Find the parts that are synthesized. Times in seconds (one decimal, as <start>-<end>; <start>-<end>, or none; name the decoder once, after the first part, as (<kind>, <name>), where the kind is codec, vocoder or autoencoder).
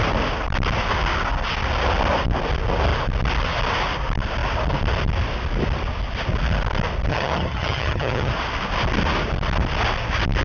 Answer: 7.1-8.3 (vocoder, HiFi-GAN)